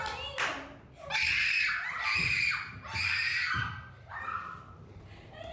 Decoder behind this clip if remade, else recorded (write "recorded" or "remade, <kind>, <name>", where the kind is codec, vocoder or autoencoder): recorded